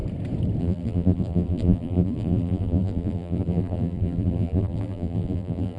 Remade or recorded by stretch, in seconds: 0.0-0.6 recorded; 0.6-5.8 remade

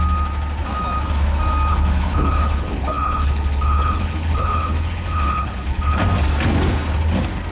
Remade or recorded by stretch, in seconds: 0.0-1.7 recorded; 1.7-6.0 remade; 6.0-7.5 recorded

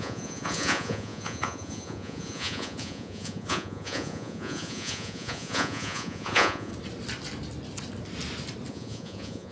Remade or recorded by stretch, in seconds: 0.0-6.7 remade; 6.7-8.7 recorded; 8.7-9.5 remade